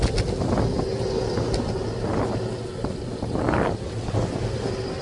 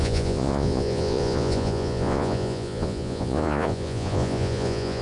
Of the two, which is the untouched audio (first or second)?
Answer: first